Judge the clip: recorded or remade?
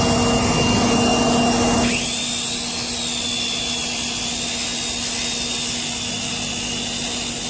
recorded